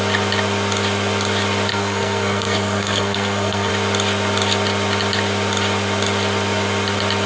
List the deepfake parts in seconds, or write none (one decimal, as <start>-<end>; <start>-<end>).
1.7-3.7